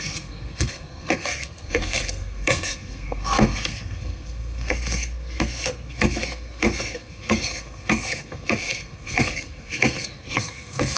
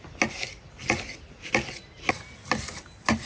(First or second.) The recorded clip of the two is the second